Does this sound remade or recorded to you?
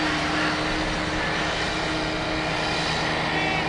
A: recorded